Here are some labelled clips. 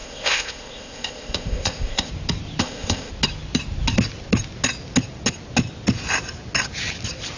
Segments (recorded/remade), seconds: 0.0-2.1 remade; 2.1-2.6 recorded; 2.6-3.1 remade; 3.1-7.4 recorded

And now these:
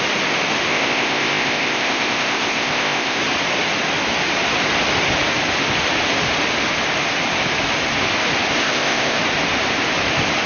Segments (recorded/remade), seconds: 0.0-0.7 recorded; 0.7-3.2 remade; 3.2-8.6 recorded; 8.6-9.2 remade; 9.2-10.5 recorded

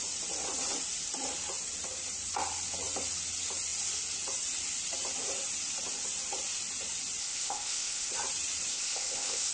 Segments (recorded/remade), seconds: 0.0-7.2 recorded; 7.2-8.1 remade; 8.1-8.7 recorded; 8.7-9.5 remade

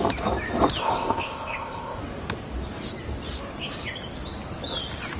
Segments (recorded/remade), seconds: 0.0-0.8 recorded; 0.8-2.0 remade; 2.0-5.2 recorded

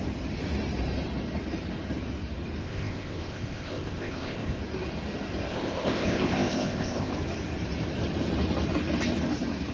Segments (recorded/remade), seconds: 0.0-2.6 recorded; 2.6-4.6 remade; 4.6-5.5 recorded; 5.5-7.1 remade; 7.1-9.7 recorded

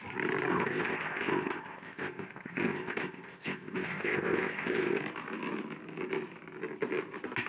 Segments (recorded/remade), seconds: 0.0-0.5 recorded; 0.5-5.0 remade; 5.0-7.5 recorded

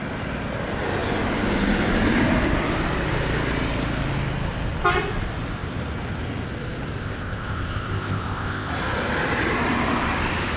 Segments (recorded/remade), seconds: 0.0-7.0 recorded; 7.0-8.7 remade; 8.7-10.6 recorded

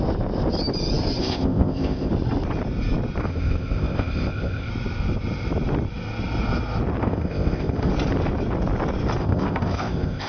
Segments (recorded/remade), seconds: 0.0-1.2 recorded; 1.2-2.1 remade; 2.1-3.2 recorded; 3.2-4.7 remade; 4.7-7.0 recorded; 7.0-7.9 remade; 7.9-9.2 recorded; 9.2-10.3 remade